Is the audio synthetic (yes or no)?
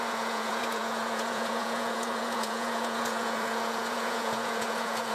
yes